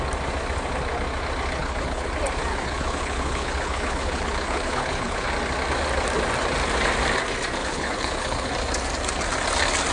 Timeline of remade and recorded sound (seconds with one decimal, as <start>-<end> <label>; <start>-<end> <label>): 0.0-1.6 recorded; 1.6-2.1 remade; 2.1-2.5 recorded; 2.5-5.3 remade; 5.3-7.6 recorded; 7.6-8.5 remade; 8.5-9.9 recorded